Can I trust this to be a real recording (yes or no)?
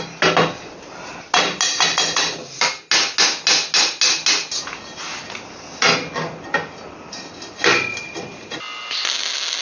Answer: yes